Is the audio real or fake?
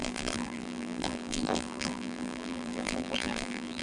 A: fake